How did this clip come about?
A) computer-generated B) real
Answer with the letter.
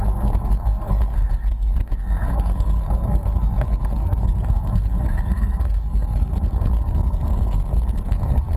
A